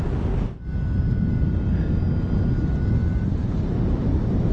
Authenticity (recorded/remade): recorded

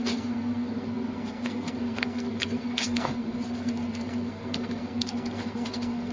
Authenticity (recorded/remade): remade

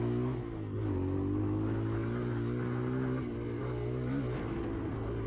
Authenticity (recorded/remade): recorded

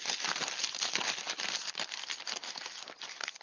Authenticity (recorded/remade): recorded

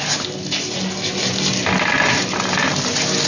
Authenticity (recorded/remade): recorded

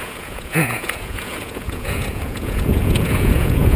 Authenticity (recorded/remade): remade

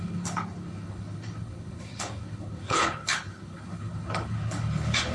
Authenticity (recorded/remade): remade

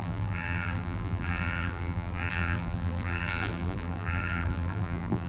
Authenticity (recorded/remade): remade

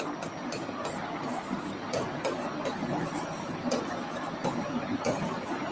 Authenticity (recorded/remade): recorded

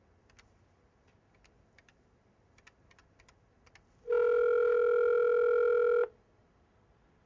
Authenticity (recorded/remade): recorded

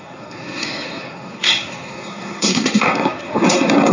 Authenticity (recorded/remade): remade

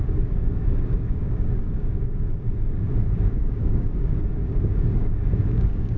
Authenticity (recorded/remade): remade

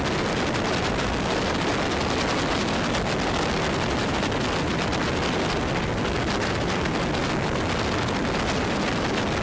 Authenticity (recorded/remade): recorded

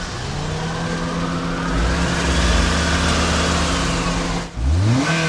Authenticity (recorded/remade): recorded